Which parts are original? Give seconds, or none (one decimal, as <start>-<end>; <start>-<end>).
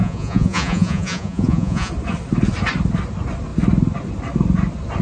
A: 1.9-5.0